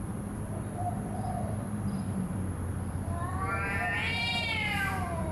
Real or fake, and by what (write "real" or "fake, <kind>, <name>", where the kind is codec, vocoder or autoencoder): fake, vocoder, BigVGAN v2